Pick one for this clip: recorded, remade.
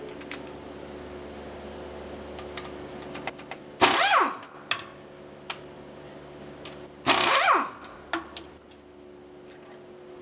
recorded